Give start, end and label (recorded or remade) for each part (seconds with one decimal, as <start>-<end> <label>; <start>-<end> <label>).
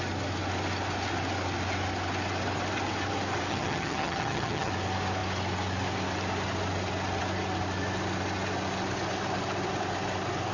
0.0-3.5 recorded; 3.5-4.7 remade; 4.7-10.5 recorded